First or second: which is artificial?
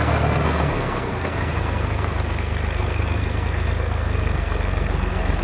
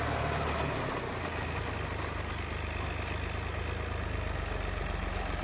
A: first